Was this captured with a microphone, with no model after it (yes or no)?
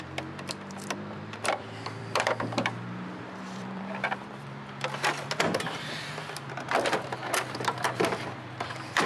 no